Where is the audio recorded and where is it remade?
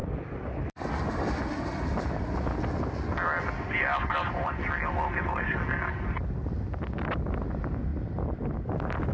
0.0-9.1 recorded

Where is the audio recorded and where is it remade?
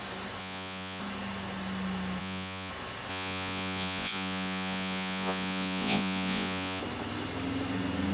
0.0-0.4 recorded; 0.4-1.0 remade; 1.0-2.2 recorded; 2.2-2.7 remade; 2.7-3.1 recorded; 3.1-6.8 remade; 6.8-8.1 recorded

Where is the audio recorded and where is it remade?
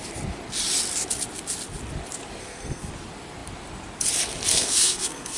0.0-2.4 recorded; 2.4-2.9 remade; 2.9-4.5 recorded; 4.5-5.4 remade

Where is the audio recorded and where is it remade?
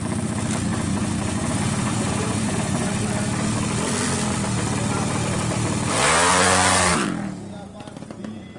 0.0-0.7 recorded; 0.7-2.9 remade; 2.9-6.3 recorded; 6.3-6.9 remade; 6.9-8.6 recorded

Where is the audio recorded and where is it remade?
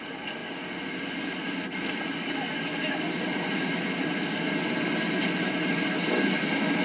0.0-5.7 recorded; 5.7-6.2 remade; 6.2-6.8 recorded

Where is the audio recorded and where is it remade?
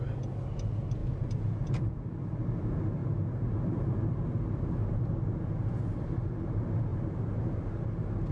0.0-3.0 recorded; 3.0-5.7 remade; 5.7-6.9 recorded; 6.9-7.7 remade; 7.7-8.3 recorded